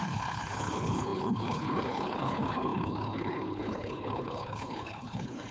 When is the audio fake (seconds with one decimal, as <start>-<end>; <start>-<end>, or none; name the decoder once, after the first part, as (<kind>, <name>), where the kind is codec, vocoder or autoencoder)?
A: 0.0-5.5 (codec, HILCodec)